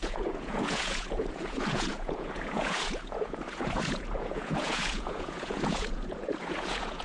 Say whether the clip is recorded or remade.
remade